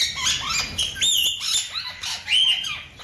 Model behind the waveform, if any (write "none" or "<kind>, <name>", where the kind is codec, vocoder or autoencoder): none